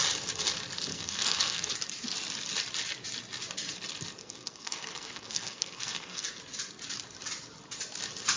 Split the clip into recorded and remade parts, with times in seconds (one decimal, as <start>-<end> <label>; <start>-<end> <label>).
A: 0.0-0.9 recorded; 0.9-1.7 remade; 1.7-4.2 recorded; 4.2-6.4 remade; 6.4-8.4 recorded